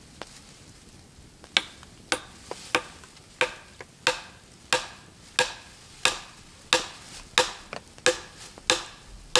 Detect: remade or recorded recorded